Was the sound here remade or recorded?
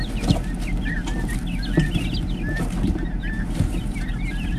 recorded